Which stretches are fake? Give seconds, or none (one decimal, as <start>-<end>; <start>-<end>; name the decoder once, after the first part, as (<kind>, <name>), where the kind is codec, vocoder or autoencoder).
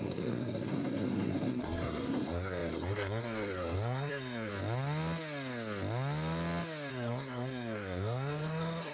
0.0-4.5 (codec, SNAC); 6.9-8.9